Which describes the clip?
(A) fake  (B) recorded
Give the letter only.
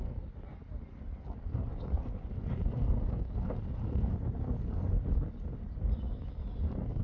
B